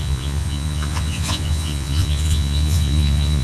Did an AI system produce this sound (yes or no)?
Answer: yes